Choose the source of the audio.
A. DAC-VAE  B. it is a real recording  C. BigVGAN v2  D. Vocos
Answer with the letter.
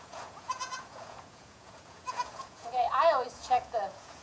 D